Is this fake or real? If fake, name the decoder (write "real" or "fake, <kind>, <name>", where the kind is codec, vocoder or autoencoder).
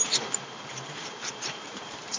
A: fake, vocoder, BigVGAN v2